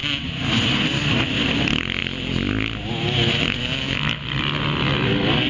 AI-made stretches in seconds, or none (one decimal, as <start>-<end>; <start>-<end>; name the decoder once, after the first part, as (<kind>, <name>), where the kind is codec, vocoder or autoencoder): none